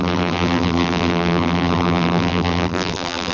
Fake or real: fake